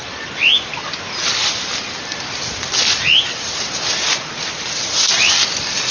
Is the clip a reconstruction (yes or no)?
no